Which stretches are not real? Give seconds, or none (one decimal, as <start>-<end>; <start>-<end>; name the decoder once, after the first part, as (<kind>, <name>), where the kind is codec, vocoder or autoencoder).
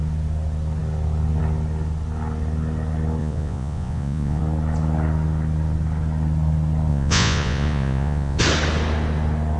3.2-4.4 (vocoder, Vocos); 6.9-8.4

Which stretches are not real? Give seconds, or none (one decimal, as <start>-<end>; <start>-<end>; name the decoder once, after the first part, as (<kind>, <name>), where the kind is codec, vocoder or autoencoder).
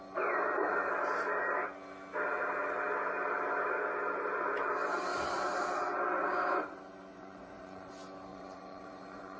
7.1-7.9 (vocoder, Vocos); 8.3-9.4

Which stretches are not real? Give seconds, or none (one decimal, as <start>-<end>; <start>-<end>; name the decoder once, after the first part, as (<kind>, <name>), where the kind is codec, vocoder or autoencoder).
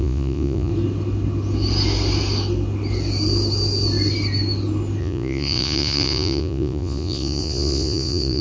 0.0-0.7 (vocoder, Vocos); 5.0-8.4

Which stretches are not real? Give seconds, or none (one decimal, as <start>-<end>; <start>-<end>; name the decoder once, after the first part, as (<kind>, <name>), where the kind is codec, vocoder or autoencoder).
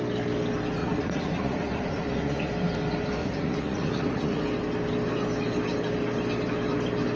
0.8-2.5 (vocoder, Vocos); 3.2-4.4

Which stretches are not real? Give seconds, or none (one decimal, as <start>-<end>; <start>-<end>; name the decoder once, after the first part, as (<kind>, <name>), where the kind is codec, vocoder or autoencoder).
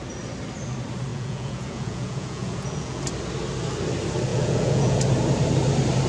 1.1-3.0 (vocoder, Vocos); 4.3-5.0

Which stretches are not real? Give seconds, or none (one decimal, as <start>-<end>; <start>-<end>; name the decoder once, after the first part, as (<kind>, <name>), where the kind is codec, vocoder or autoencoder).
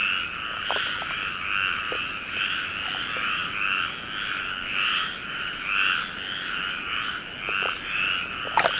none